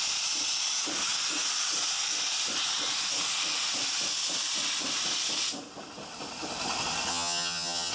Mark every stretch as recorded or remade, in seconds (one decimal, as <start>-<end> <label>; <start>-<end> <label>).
0.0-7.1 recorded; 7.1-7.9 remade